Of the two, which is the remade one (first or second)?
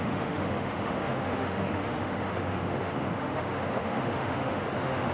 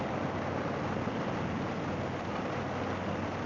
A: first